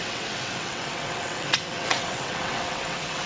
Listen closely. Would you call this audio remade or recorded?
remade